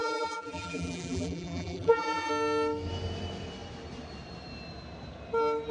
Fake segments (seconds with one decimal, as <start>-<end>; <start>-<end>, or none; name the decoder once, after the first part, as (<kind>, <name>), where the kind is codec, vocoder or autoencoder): 0.0-2.3 (vocoder, BigVGAN v2)